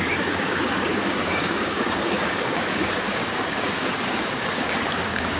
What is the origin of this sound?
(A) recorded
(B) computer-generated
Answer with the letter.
B